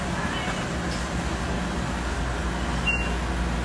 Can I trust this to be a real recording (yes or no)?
yes